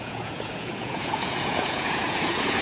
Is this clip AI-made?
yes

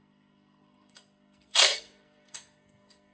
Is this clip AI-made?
yes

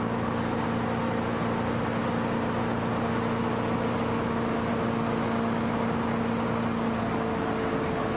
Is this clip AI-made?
no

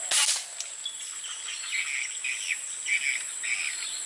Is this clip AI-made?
no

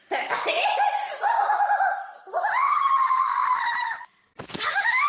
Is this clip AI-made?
no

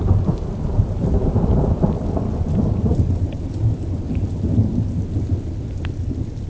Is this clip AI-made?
no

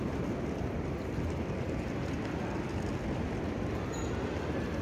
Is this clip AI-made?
no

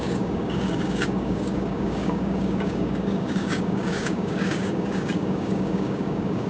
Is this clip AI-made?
yes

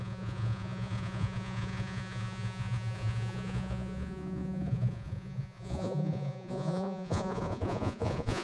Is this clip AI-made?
yes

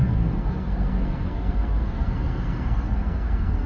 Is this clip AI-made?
yes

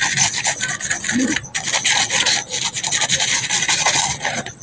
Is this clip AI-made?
no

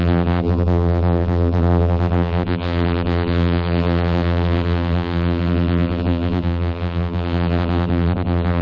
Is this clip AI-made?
yes